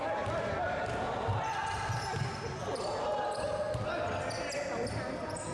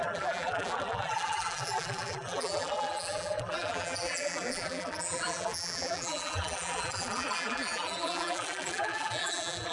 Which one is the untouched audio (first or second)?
first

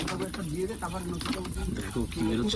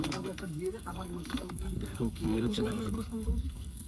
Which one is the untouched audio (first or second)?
first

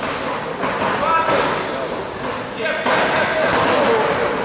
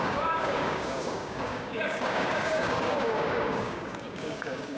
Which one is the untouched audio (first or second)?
first